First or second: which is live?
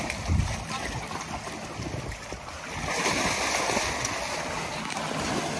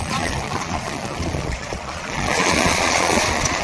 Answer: first